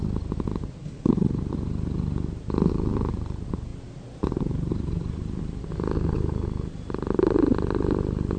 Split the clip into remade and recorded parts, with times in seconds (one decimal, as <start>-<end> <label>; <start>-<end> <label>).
0.0-0.8 recorded; 0.8-1.4 remade; 1.4-8.4 recorded